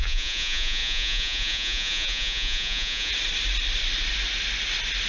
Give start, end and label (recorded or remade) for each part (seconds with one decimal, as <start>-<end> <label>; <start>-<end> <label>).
0.0-3.1 remade; 3.1-5.1 recorded